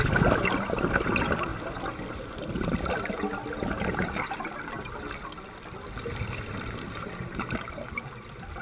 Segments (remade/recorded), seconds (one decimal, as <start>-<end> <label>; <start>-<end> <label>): 0.0-8.6 recorded